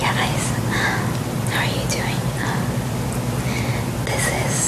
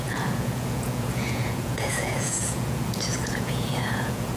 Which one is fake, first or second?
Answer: second